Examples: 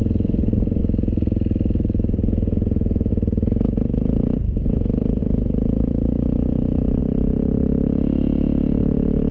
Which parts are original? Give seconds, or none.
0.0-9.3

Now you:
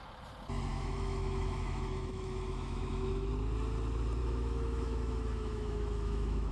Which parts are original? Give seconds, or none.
0.0-0.7; 3.3-4.2

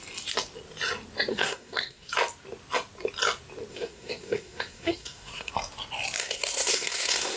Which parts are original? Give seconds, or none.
0.0-1.3; 2.1-3.7; 5.5-6.2